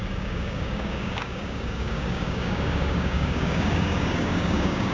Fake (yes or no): yes